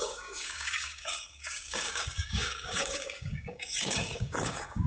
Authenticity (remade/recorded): remade